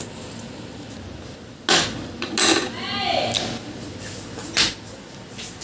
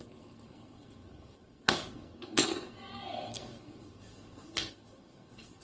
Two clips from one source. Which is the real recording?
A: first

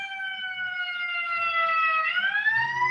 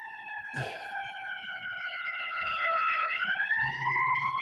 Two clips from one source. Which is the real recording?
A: first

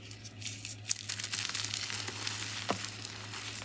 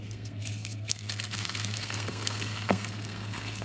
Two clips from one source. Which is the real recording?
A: first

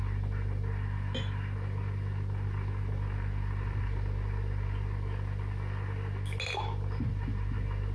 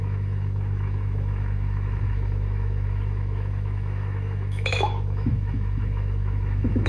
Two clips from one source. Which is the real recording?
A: first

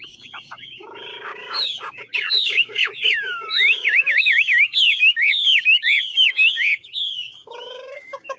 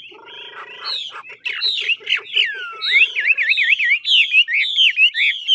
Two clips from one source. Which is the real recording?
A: second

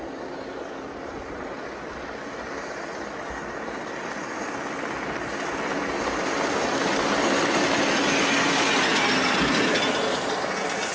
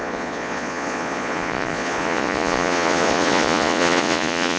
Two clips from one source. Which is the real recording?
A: first